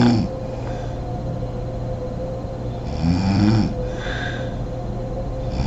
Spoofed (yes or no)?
no